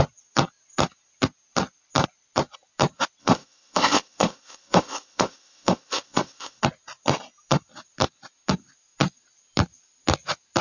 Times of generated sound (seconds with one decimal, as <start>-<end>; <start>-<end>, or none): 3.2-6.6